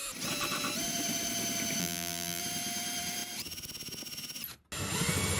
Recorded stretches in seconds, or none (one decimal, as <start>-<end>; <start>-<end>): 0.0-1.8; 2.4-5.4